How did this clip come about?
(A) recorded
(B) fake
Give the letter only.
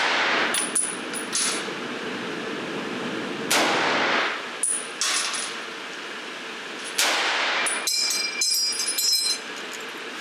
A